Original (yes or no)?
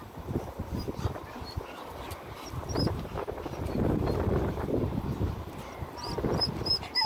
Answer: no